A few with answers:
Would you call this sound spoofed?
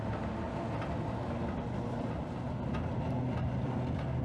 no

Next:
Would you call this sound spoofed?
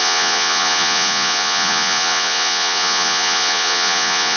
yes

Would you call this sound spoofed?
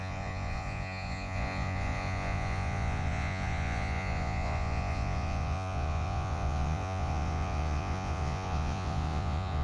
yes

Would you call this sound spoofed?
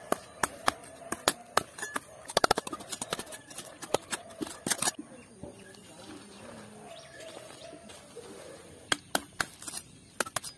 no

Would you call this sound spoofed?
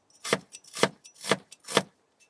no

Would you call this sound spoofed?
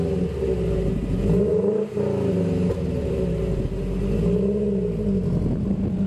no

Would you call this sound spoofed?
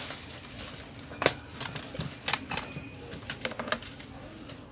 no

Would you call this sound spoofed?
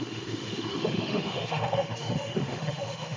yes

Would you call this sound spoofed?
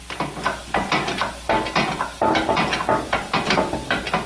no